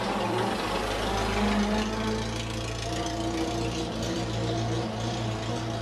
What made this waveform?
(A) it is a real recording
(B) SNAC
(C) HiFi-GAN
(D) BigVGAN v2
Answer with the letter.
A